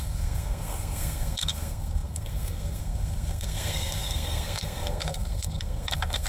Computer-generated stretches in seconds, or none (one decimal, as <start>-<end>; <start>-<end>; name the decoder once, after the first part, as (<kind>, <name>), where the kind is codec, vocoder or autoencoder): 0.0-6.3 (codec, SNAC)